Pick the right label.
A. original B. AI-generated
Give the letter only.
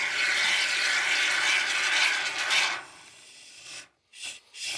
A